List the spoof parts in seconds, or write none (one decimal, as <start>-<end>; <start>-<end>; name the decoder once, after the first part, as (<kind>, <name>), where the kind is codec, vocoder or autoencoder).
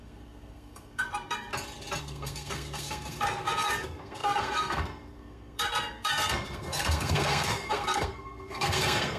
0.0-1.5 (codec, SNAC); 2.0-9.2